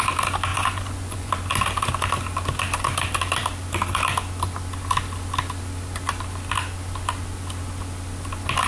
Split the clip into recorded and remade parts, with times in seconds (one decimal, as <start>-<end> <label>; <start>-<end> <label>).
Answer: 0.0-0.5 recorded; 0.5-1.3 remade; 1.3-8.7 recorded